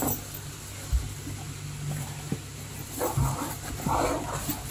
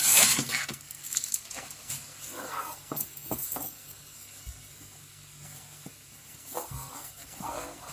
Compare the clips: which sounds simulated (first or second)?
second